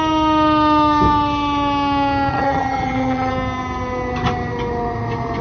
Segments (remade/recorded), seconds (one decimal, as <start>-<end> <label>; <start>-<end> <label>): 0.0-2.3 recorded; 2.3-3.3 remade; 3.3-5.4 recorded